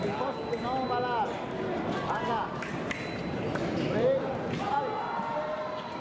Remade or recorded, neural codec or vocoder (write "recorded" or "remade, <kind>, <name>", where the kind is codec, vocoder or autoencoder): recorded